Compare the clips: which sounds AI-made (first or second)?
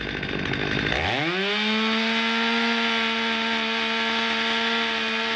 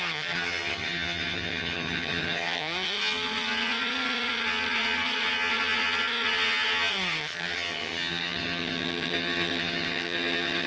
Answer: second